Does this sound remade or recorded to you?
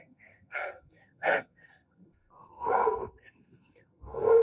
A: remade